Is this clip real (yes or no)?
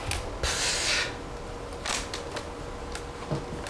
yes